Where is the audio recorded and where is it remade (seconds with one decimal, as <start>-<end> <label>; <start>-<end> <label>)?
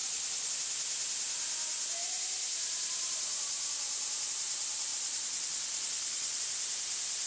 0.0-0.5 remade; 0.5-4.9 recorded; 4.9-6.4 remade; 6.4-7.3 recorded